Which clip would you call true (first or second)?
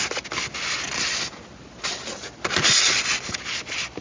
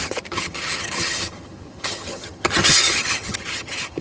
first